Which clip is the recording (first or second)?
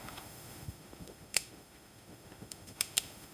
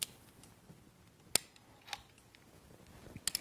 second